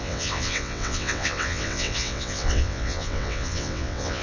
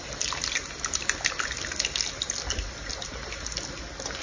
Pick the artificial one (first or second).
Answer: first